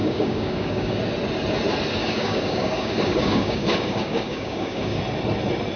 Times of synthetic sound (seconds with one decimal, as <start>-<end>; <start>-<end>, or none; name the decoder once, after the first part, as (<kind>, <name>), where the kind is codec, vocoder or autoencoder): 0.0-1.0 (codec, DAC); 2.0-5.0